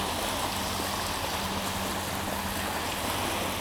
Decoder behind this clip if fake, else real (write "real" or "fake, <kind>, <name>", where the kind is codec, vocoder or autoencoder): real